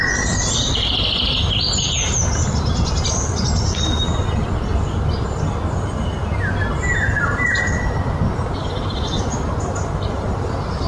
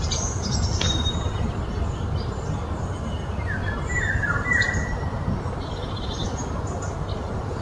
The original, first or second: first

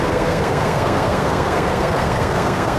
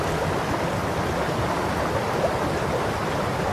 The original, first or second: second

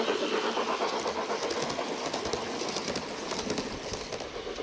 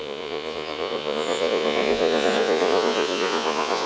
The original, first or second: first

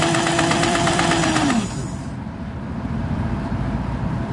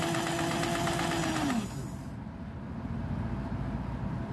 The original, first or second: second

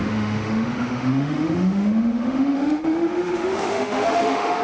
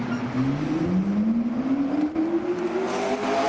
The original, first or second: second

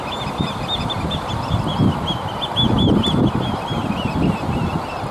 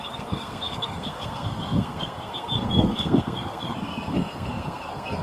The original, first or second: first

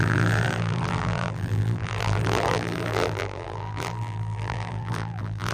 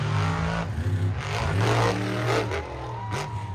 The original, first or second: second